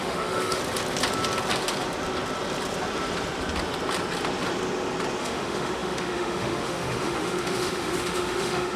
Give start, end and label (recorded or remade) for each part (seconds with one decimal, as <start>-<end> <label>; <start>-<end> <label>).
0.0-0.6 remade; 0.6-5.2 recorded; 5.2-8.8 remade